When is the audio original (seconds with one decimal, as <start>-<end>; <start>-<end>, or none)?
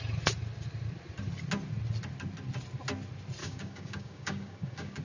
0.0-3.4